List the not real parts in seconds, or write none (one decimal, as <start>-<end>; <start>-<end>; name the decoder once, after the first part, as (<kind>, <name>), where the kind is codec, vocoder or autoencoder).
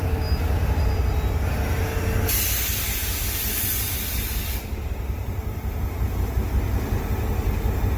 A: 3.0-6.3 (vocoder, BigVGAN v2)